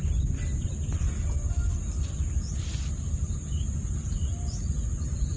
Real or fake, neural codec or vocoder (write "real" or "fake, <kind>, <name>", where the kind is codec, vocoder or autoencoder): real